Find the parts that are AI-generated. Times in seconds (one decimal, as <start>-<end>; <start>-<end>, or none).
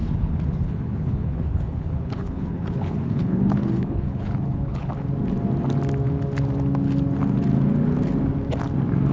0.0-4.9